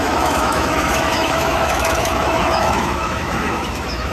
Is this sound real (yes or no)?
no